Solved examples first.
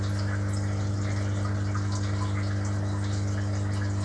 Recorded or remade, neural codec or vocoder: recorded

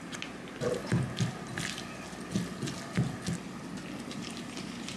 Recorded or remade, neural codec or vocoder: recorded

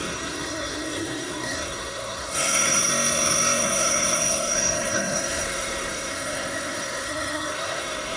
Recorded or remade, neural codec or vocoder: remade, codec, SNAC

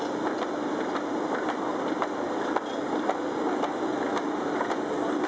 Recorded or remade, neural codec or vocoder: recorded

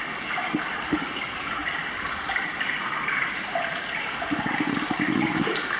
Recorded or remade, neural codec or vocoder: recorded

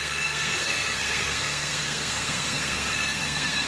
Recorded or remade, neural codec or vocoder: remade, codec, SNAC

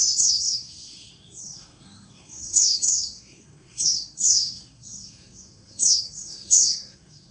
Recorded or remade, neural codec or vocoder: remade, codec, SNAC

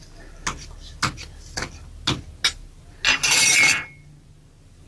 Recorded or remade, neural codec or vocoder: recorded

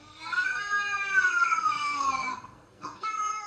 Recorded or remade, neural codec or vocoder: remade, codec, SNAC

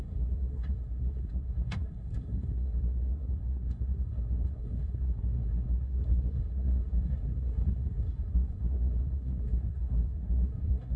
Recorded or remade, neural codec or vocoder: remade, codec, SNAC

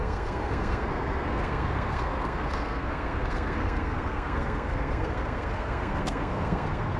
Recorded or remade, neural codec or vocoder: remade, codec, SNAC